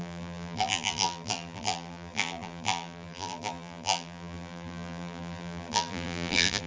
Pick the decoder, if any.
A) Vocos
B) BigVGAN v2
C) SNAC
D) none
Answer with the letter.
B